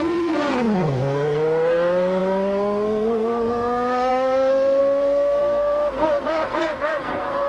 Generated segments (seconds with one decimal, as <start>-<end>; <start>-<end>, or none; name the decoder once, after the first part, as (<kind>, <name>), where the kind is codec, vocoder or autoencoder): 0.0-7.5 (codec, SNAC)